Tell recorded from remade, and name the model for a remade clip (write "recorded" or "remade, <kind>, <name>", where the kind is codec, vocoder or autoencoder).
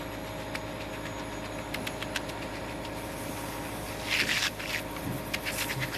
recorded